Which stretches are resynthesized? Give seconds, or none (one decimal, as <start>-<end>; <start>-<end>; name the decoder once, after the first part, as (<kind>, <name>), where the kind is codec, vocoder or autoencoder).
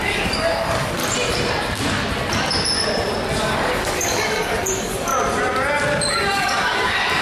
0.0-1.0 (codec, DAC); 3.4-5.1; 6.1-7.2